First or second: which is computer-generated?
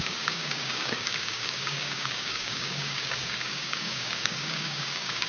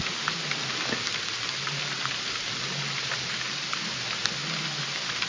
first